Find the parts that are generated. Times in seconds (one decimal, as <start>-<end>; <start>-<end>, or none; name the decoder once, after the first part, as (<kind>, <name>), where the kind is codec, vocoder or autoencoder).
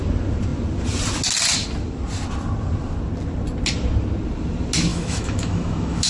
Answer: 4.9-6.1 (autoencoder, DAC-VAE)